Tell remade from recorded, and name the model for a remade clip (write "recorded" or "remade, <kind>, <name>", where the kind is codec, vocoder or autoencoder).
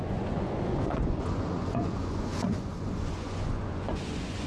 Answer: remade, vocoder, Vocos